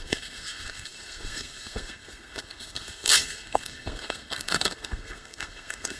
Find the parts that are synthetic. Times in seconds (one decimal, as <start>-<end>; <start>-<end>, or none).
0.0-6.0